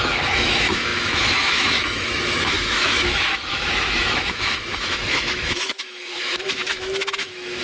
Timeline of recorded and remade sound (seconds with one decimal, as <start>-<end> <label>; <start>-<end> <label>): 0.0-7.6 remade